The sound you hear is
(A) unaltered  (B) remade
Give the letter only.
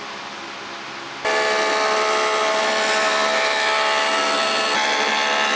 A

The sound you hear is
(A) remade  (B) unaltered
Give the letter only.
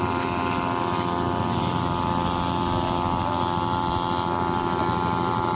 B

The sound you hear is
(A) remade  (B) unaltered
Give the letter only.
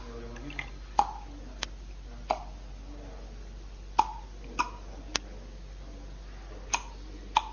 B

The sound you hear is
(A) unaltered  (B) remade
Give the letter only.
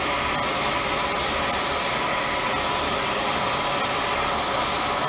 A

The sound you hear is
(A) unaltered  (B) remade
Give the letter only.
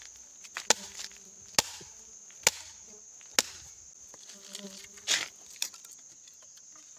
A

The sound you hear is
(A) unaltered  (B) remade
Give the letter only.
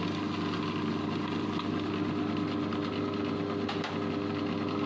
A